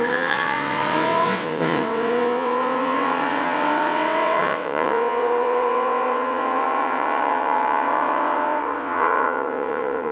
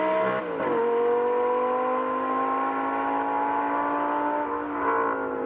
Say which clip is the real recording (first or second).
second